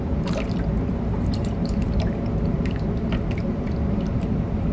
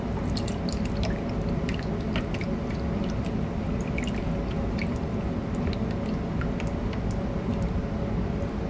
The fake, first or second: first